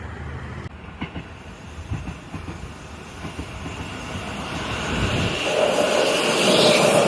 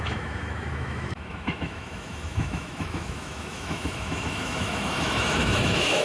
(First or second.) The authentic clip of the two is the first